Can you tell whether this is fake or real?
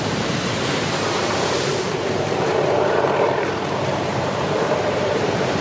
fake